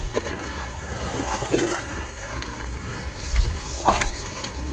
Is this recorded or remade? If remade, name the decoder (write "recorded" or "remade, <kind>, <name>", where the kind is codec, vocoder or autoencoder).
remade, codec, SNAC